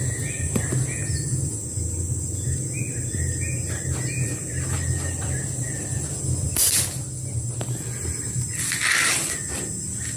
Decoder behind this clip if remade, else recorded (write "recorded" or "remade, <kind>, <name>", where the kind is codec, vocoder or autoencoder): recorded